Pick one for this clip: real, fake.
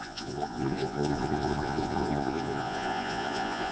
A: fake